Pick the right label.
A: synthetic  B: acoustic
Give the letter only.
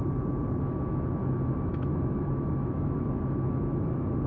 A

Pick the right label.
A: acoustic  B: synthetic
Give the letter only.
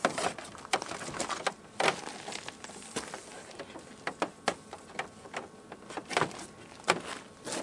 A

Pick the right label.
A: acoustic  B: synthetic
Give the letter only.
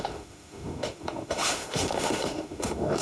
B